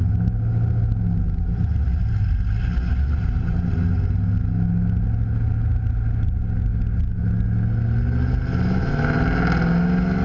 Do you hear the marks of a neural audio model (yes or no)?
no